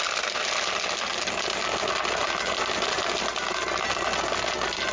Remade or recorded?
recorded